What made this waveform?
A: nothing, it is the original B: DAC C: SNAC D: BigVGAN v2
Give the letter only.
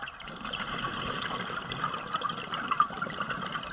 A